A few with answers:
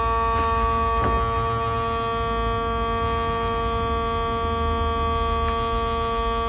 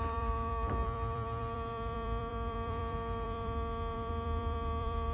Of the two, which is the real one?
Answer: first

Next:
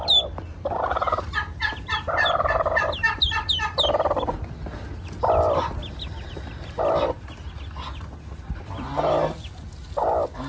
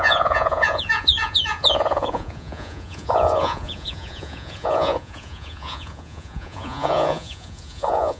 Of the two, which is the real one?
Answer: first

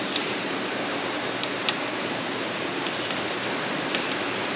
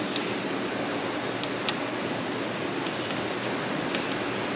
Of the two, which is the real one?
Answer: second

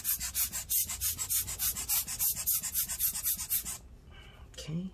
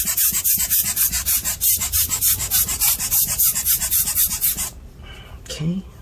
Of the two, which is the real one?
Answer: first